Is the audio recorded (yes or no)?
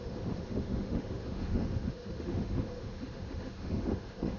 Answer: no